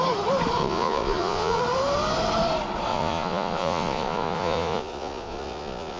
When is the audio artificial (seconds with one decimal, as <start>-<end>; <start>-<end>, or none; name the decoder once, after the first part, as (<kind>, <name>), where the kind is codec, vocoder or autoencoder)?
0.6-1.6 (vocoder, Vocos); 2.9-6.0